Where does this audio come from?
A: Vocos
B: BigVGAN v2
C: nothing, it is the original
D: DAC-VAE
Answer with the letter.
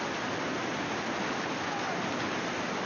C